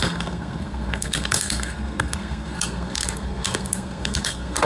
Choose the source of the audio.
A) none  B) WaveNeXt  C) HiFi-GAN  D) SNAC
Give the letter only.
D